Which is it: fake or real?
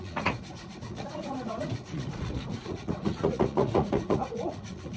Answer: fake